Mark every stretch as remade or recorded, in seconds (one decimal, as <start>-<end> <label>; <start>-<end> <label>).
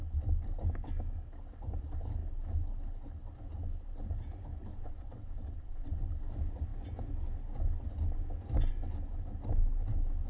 0.0-4.7 recorded; 4.7-6.0 remade; 6.0-10.3 recorded